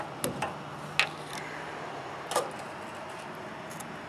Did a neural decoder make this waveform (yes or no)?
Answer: no